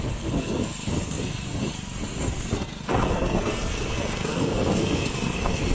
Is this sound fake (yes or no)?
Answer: yes